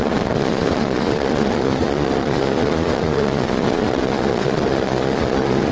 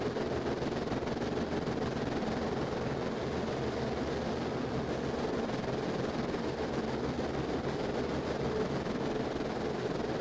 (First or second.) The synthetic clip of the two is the first